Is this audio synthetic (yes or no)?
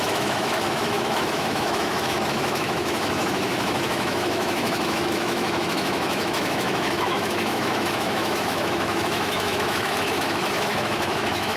yes